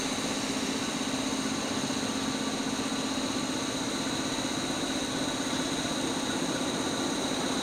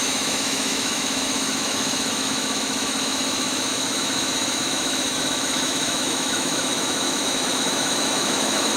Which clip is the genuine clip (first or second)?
first